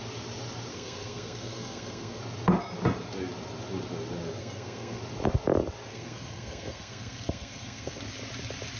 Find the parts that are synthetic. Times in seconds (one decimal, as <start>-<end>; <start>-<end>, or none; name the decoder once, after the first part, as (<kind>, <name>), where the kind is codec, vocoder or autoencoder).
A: 0.7-2.2 (codec, SNAC); 4.4-5.0; 5.9-8.0